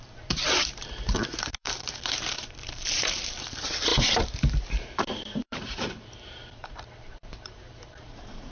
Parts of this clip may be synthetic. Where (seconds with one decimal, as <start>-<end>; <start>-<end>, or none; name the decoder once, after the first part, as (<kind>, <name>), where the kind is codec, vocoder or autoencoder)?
0.0-8.5 (vocoder, BigVGAN v2)